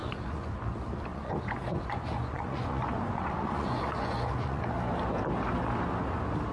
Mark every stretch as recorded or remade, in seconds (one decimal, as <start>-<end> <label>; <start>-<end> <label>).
0.0-0.5 remade; 0.5-1.1 recorded; 1.1-4.6 remade; 4.6-6.5 recorded